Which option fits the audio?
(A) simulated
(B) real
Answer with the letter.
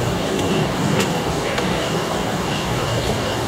A